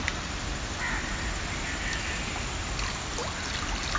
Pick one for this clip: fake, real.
real